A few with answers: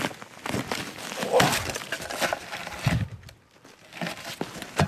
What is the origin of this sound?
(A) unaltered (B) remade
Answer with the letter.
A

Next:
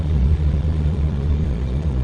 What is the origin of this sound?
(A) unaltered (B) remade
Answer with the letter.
B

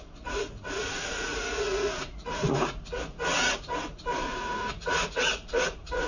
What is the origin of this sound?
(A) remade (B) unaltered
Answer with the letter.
A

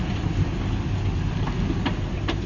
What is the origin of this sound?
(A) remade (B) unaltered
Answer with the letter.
B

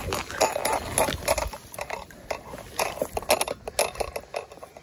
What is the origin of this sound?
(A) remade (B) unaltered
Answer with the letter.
B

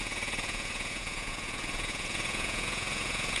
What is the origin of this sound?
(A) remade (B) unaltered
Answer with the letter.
A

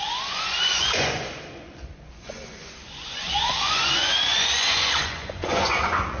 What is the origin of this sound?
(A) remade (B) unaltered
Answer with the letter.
A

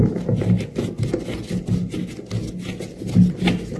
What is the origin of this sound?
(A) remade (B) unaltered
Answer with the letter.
B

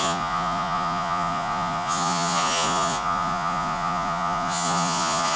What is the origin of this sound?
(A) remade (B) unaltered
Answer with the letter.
A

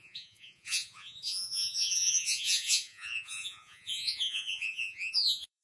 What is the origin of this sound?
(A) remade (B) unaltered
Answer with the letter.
A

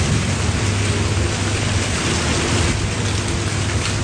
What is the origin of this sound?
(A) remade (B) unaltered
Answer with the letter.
B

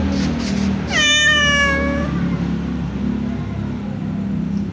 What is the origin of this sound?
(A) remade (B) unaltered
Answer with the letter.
B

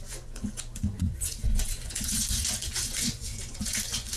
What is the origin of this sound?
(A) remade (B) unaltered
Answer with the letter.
A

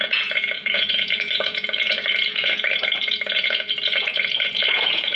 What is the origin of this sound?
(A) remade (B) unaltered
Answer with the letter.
A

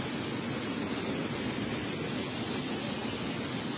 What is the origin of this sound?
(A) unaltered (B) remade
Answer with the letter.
A